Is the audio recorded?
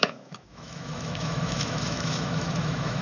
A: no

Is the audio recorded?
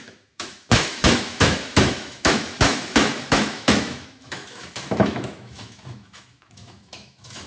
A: no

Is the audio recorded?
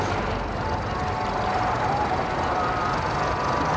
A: yes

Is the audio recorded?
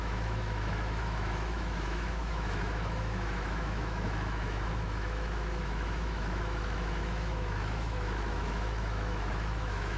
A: no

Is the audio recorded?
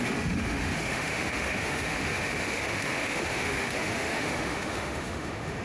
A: no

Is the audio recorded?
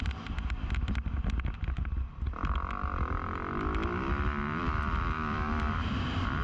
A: yes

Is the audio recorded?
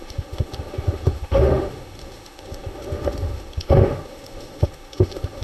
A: no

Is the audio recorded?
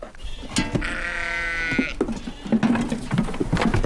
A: yes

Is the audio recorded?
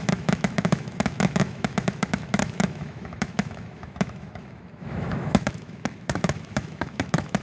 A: no